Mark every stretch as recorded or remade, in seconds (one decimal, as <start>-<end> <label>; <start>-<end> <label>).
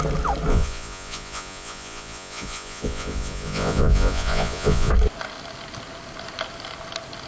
0.0-0.5 recorded; 0.5-4.9 remade; 4.9-7.3 recorded